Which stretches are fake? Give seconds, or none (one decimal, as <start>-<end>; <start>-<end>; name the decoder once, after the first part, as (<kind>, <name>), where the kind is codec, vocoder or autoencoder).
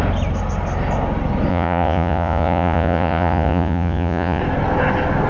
1.5-4.4 (vocoder, Vocos)